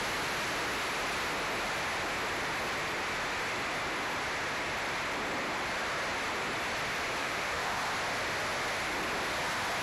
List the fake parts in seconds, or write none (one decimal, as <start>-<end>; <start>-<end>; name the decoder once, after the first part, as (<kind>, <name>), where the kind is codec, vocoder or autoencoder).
7.2-7.8 (autoencoder, DAC-VAE)